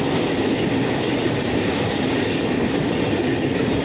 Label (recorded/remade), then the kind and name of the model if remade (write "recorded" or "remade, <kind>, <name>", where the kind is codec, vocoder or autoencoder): recorded